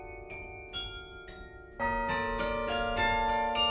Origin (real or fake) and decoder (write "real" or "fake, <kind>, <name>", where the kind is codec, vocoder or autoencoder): real